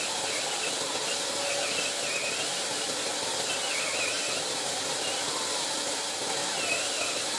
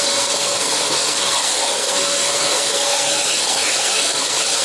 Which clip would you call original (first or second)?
first